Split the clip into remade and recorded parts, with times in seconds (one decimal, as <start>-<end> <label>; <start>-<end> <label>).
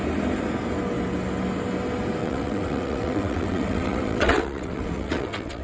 0.0-2.2 recorded; 2.2-5.6 remade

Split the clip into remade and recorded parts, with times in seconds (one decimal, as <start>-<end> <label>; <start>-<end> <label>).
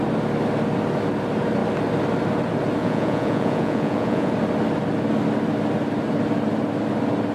0.0-2.8 recorded; 2.8-4.3 remade; 4.3-7.3 recorded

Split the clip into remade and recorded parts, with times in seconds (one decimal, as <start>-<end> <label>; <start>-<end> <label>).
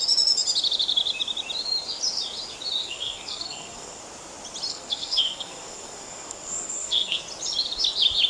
0.0-2.8 recorded; 2.8-4.0 remade; 4.0-4.7 recorded; 4.7-7.2 remade; 7.2-8.3 recorded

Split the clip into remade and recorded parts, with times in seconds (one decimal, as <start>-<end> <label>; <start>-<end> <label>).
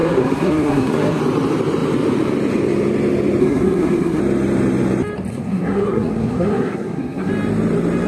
0.0-1.2 remade; 1.2-3.4 recorded; 3.4-4.2 remade; 4.2-5.3 recorded; 5.3-7.3 remade; 7.3-8.1 recorded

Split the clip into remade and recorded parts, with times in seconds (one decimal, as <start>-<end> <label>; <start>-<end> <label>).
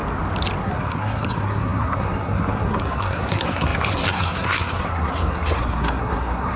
0.0-0.6 recorded; 0.6-6.6 remade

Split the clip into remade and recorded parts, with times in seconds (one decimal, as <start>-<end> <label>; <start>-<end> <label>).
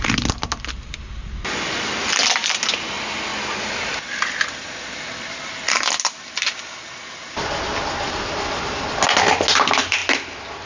0.0-10.7 recorded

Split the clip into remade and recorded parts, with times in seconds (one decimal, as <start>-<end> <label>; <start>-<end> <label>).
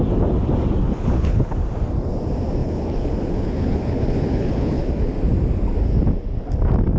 0.0-0.8 recorded; 0.8-1.5 remade; 1.5-2.6 recorded; 2.6-5.1 remade; 5.1-7.0 recorded